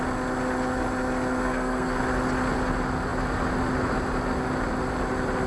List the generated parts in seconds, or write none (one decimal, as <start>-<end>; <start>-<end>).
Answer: 1.4-2.0